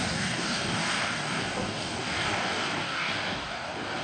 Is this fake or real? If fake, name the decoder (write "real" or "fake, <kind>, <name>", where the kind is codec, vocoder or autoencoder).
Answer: fake, codec, DAC